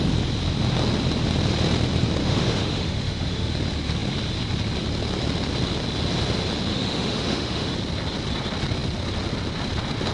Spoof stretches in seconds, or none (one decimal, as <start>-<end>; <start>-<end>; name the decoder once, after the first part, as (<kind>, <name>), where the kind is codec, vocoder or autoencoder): 2.2-3.5 (autoencoder, DAC-VAE); 6.7-7.7